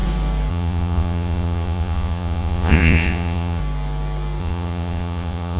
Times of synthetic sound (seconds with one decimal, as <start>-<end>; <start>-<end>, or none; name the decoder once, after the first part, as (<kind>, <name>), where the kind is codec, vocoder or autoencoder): 0.5-3.6 (vocoder, Vocos); 4.4-5.6